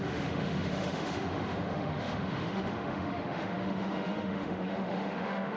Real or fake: fake